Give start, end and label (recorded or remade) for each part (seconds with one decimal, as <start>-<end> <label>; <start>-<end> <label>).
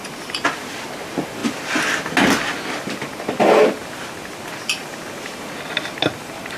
0.0-6.6 recorded